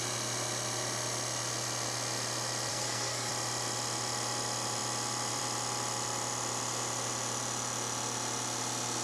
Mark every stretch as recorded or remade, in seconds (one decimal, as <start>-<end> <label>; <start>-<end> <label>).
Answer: 0.0-2.7 recorded; 2.7-3.3 remade; 3.3-9.0 recorded